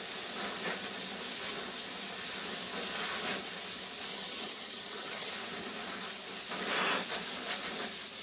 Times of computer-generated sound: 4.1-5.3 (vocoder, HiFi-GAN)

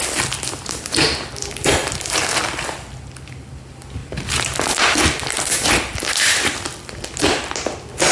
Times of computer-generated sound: none

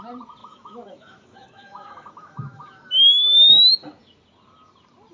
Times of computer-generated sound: 0.4-3.5 (autoencoder, DAC-VAE)

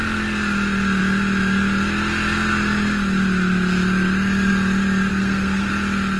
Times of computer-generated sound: 5.1-5.7 (codec, SNAC)

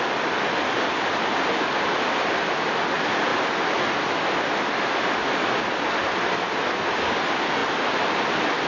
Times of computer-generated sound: none

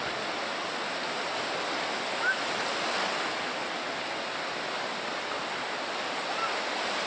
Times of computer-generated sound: none

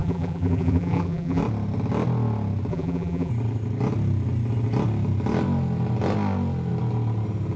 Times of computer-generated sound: 0.0-1.4 (vocoder, BigVGAN v2); 2.7-3.3